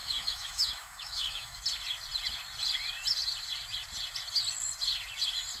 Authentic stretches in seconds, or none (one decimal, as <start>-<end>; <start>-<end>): 1.6-5.6